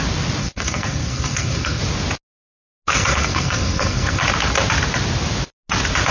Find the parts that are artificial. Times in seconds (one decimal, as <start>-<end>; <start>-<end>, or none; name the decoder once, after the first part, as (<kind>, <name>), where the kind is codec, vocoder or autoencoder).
0.4-1.8 (codec, SNAC); 2.9-4.2

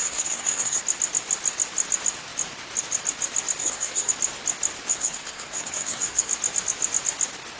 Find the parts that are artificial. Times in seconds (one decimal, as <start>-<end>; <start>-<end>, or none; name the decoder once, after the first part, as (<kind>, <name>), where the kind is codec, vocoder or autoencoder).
0.0-0.8 (codec, SNAC); 3.6-4.1; 4.9-6.3

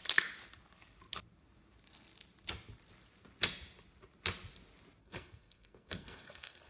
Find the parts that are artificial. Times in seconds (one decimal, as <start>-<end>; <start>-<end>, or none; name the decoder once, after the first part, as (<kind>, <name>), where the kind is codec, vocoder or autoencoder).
5.0-6.7 (codec, SNAC)

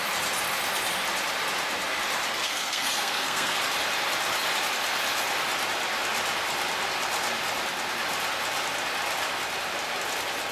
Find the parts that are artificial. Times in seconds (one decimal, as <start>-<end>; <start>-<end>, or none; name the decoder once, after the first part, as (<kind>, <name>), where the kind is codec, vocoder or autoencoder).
2.4-3.6 (codec, SNAC)

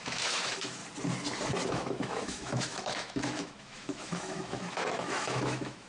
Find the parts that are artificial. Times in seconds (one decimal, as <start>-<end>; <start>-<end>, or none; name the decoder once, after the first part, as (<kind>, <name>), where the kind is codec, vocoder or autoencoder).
0.0-0.8 (autoencoder, DAC-VAE); 1.7-5.9

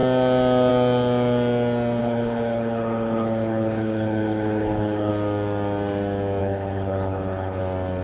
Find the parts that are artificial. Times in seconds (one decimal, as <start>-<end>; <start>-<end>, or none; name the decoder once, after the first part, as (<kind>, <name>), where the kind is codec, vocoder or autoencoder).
2.0-5.1 (codec, HILCodec); 6.4-7.6